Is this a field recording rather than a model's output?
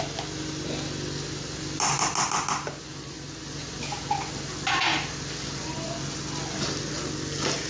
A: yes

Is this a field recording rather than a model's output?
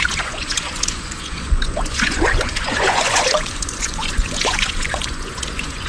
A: no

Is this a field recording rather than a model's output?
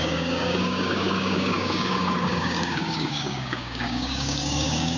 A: no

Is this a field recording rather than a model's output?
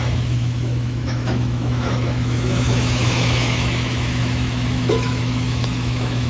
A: no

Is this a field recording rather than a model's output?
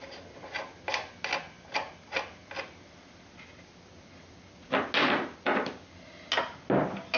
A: yes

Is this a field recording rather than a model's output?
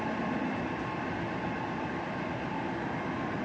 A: yes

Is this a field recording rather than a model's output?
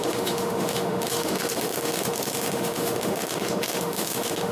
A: no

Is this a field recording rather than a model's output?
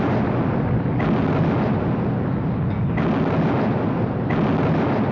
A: yes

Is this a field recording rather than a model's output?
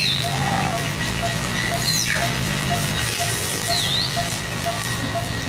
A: no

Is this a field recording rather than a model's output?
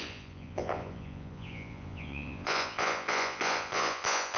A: no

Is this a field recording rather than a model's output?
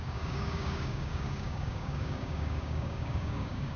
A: no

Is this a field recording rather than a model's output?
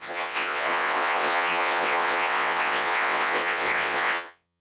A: no